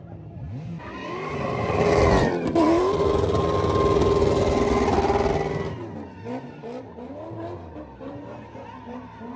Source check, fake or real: real